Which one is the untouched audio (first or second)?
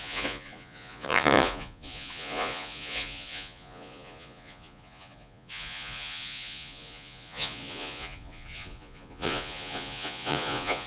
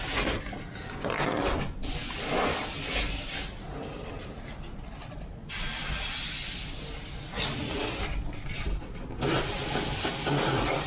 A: second